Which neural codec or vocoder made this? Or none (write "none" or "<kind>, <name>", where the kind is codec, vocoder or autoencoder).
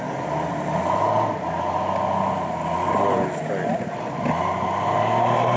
none